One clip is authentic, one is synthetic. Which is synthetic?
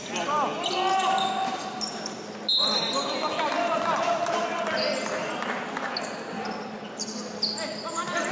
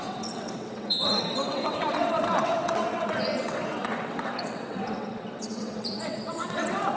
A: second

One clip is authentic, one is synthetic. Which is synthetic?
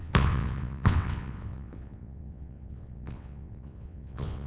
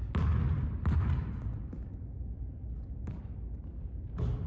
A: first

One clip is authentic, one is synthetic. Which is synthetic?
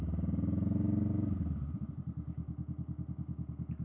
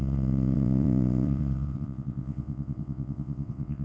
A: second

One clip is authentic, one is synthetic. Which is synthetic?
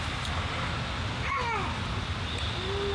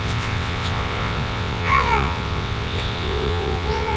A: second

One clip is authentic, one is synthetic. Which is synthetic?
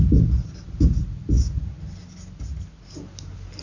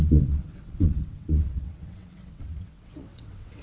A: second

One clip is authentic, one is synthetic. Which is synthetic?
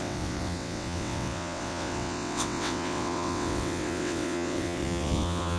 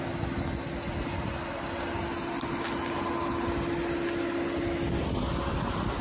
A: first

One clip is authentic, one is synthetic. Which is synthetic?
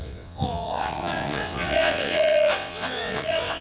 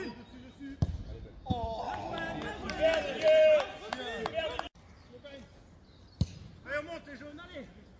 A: first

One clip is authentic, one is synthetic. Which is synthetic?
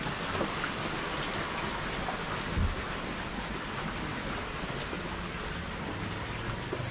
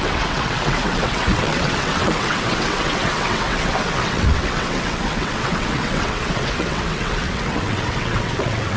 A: second